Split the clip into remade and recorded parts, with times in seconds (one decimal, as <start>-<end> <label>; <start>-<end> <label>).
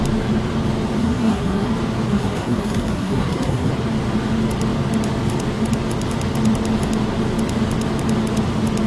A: 0.0-1.0 recorded; 1.0-1.7 remade; 1.7-2.1 recorded; 2.1-3.7 remade; 3.7-8.9 recorded